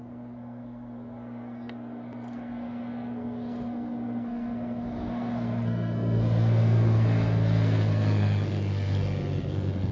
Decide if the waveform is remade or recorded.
remade